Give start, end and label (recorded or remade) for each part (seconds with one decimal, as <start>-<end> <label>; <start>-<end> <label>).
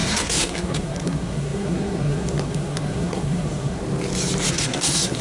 0.0-3.8 remade; 3.8-4.5 recorded; 4.5-5.2 remade